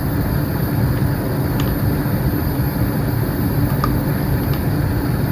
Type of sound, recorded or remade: recorded